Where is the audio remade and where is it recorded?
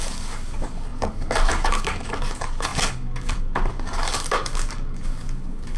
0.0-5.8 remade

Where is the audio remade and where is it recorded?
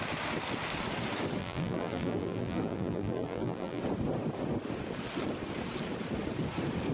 0.0-1.4 recorded; 1.4-3.8 remade; 3.8-6.9 recorded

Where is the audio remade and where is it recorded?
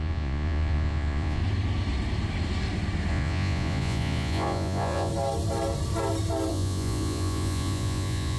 0.0-1.4 remade; 1.4-3.1 recorded; 3.1-5.1 remade; 5.1-6.5 recorded; 6.5-8.4 remade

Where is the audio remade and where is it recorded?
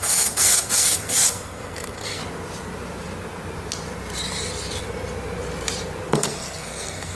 0.0-2.2 remade; 2.2-6.1 recorded; 6.1-7.1 remade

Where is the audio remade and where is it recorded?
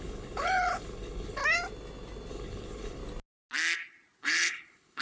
0.0-1.4 remade; 1.4-2.3 recorded; 2.3-3.0 remade; 3.0-4.2 recorded; 4.2-5.0 remade